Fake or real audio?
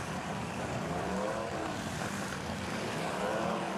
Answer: fake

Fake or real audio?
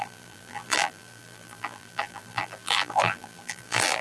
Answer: fake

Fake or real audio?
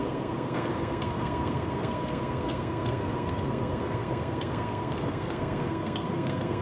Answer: fake